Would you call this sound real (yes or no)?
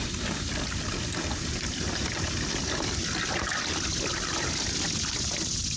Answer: yes